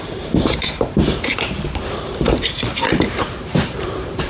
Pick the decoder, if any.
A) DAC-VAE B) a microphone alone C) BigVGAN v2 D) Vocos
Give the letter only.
C